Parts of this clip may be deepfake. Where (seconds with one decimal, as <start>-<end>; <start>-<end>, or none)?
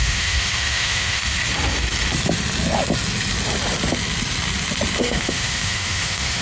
0.0-1.2; 5.0-6.4